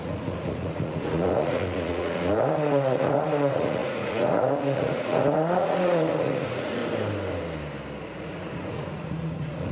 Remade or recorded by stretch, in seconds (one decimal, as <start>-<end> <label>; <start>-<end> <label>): 0.0-6.8 remade; 6.8-8.2 recorded; 8.2-9.7 remade